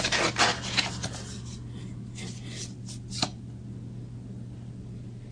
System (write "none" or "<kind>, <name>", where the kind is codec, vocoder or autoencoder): none